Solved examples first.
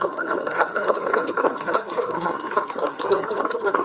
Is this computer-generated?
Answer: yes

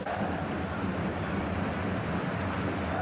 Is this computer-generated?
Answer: no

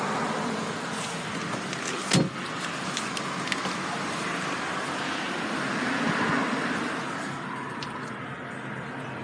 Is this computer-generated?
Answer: no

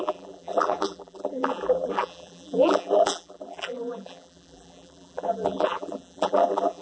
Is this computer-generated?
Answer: yes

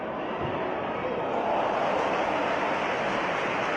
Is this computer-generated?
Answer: no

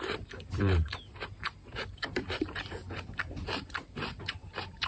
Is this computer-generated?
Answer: yes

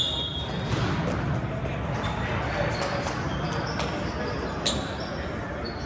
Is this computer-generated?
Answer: no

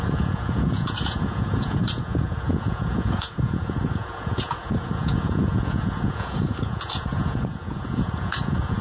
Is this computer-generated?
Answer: yes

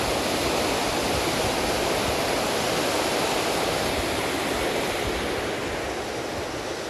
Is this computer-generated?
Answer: no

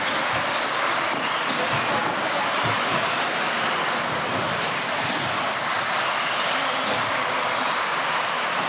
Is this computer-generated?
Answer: yes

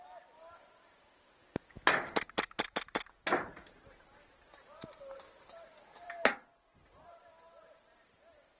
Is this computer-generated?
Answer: no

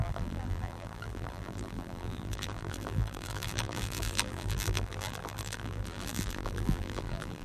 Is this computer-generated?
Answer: yes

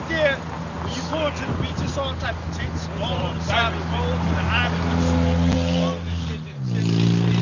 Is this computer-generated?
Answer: no